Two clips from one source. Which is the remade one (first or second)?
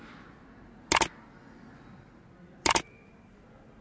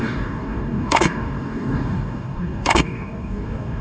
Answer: second